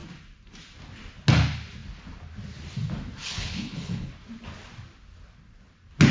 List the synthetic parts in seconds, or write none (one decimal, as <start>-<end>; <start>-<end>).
3.2-4.1